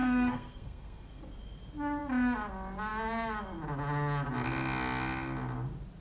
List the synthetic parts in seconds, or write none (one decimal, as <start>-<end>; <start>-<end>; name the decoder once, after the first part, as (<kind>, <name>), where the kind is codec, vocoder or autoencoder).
0.0-1.2 (codec, SNAC)